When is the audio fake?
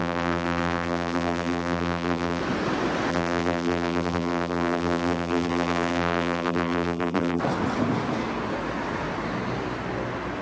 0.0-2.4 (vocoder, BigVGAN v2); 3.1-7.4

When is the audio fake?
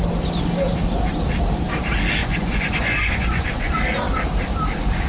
2.2-3.7 (vocoder, Vocos)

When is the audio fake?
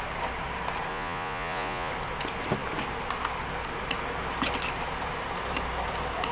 0.9-1.9 (vocoder, Vocos)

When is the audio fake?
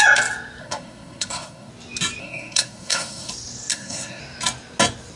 0.6-1.7 (codec, SNAC); 2.2-3.3; 3.7-4.2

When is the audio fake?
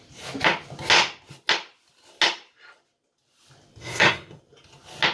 3.8-4.4 (codec, SNAC)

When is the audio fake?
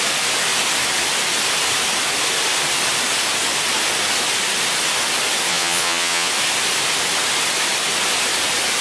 5.5-6.3 (vocoder, Vocos)